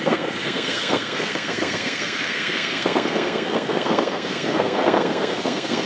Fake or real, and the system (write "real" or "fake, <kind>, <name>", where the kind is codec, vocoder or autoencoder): fake, codec, SNAC